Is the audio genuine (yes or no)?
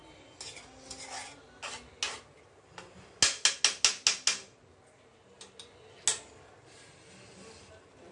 yes